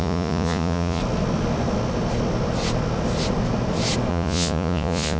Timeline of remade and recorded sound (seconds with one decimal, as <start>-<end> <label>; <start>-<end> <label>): 0.0-1.0 remade; 1.0-4.1 recorded; 4.1-5.2 remade